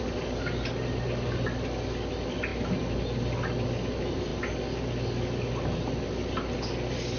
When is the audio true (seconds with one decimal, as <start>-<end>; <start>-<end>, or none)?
0.0-7.2